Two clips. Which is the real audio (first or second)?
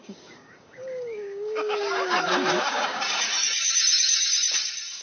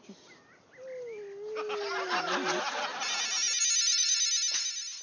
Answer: second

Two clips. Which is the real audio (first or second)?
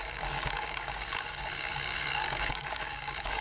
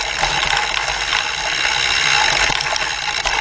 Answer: second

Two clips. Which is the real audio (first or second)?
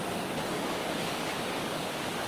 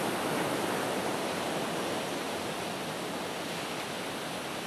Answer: second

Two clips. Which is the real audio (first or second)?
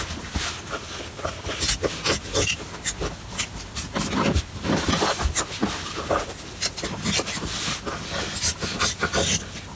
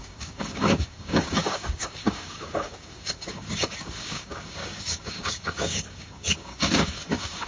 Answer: first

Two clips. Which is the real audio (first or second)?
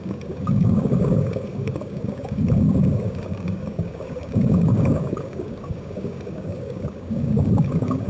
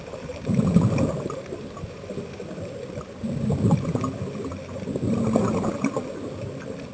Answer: second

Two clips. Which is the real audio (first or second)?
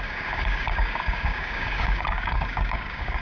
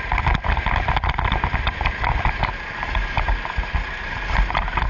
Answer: second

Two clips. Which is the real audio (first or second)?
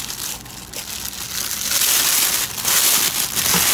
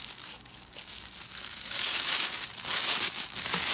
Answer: first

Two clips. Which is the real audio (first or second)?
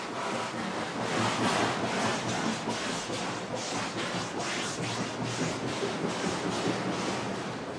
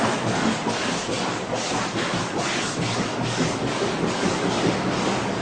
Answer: first